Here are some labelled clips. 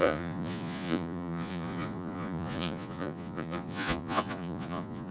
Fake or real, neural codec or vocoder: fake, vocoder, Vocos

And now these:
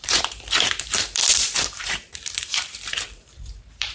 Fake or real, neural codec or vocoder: fake, vocoder, BigVGAN v2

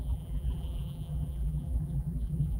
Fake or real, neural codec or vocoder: fake, vocoder, BigVGAN v2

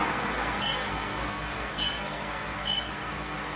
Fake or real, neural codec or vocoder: fake, codec, SNAC